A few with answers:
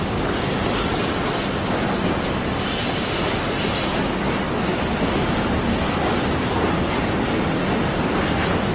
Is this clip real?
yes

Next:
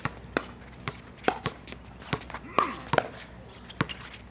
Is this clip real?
yes